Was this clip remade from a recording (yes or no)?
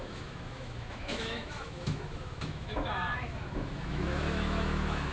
yes